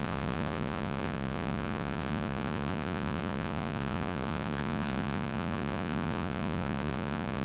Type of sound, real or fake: fake